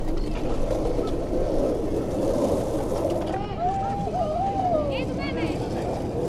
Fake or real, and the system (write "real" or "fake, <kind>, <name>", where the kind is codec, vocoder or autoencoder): real